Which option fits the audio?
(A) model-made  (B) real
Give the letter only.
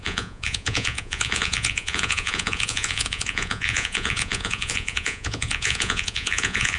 A